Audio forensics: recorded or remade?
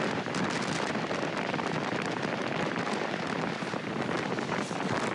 remade